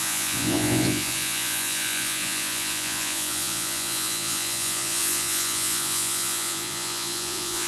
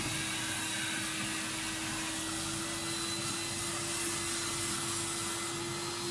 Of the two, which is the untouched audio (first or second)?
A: second